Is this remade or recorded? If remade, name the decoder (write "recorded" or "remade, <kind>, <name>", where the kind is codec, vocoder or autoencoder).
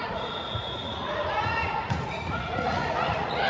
remade, vocoder, Vocos